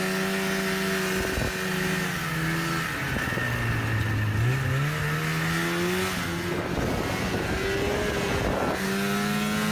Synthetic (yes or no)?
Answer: no